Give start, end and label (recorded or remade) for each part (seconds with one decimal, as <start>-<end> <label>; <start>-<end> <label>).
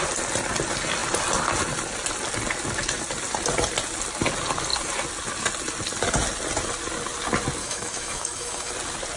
0.0-7.6 recorded; 7.6-8.7 remade; 8.7-9.2 recorded